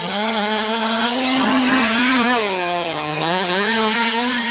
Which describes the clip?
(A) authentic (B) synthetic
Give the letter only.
B